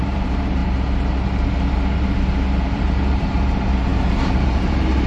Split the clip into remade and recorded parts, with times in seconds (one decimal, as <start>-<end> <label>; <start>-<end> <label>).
0.0-0.6 remade; 0.6-2.7 recorded; 2.7-5.1 remade